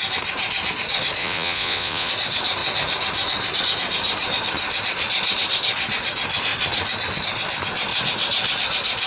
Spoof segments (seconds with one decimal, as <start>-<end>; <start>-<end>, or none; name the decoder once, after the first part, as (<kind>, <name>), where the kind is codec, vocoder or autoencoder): 1.2-2.1 (vocoder, Vocos)